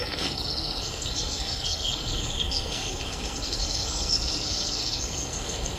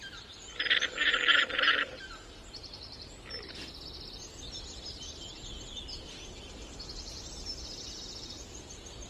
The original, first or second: second